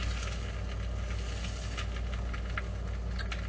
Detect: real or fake real